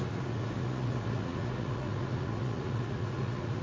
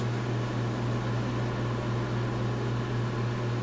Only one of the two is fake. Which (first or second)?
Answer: first